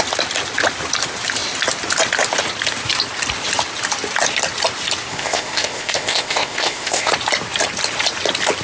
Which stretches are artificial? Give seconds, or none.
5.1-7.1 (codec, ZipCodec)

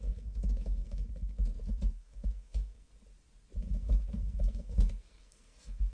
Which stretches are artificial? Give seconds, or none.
0.0-2.9 (codec, SNAC); 3.6-5.9

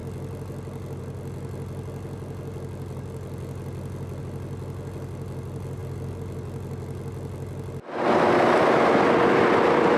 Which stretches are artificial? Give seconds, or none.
none

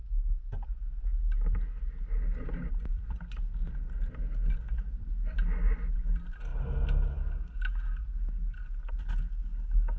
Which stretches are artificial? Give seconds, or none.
none

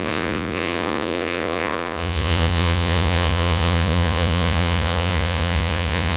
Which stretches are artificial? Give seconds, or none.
0.0-6.2 (vocoder, Vocos)

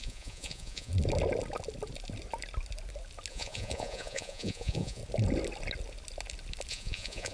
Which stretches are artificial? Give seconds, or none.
0.0-0.9 (vocoder, Vocos); 3.3-5.0; 6.7-7.3

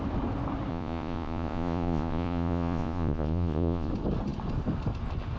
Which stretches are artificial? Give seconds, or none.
0.7-3.9 (vocoder, Vocos)

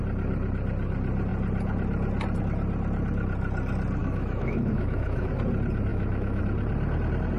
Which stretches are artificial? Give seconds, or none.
4.0-5.3 (autoencoder, DAC-VAE); 5.9-6.4